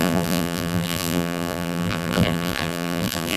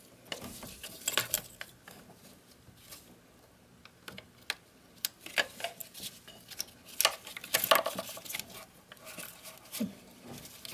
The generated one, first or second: first